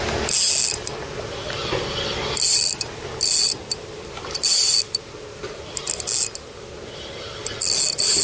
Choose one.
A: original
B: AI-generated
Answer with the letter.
A